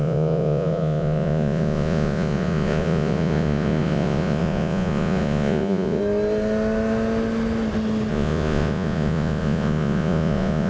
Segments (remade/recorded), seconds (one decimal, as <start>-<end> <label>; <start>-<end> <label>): 0.0-6.0 remade; 6.0-8.1 recorded; 8.1-10.7 remade